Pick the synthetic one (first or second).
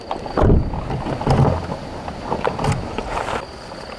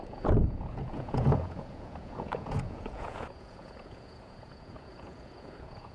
second